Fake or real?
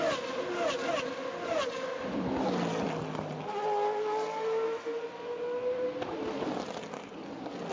real